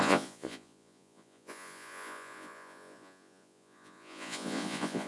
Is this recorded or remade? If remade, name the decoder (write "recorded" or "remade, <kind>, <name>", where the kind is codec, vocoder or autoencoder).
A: remade, vocoder, Vocos